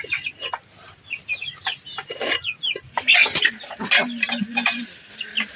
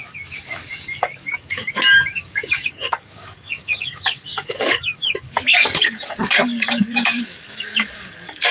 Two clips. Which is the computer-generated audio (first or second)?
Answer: second